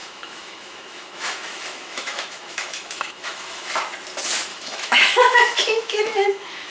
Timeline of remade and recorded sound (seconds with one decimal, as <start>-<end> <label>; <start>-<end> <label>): 0.0-3.7 remade; 3.7-4.5 recorded; 4.5-6.7 remade